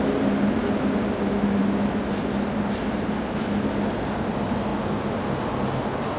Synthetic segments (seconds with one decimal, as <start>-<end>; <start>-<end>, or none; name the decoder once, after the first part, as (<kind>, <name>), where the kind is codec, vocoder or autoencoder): none

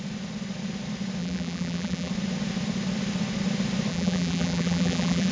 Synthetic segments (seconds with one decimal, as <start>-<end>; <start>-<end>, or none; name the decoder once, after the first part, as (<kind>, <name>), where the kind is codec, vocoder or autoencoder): 1.2-2.1 (vocoder, BigVGAN v2); 3.9-5.3

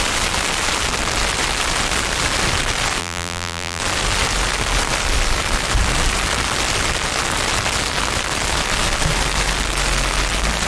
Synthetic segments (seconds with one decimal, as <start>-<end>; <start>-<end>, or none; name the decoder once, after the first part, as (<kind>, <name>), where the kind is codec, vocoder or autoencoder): 3.0-3.8 (vocoder, BigVGAN v2)